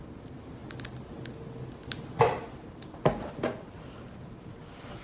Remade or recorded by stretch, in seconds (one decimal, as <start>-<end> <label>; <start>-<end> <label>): 0.0-5.0 recorded